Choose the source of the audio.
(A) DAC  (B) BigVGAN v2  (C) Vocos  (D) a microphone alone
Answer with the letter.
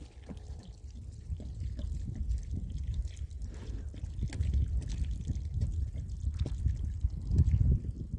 D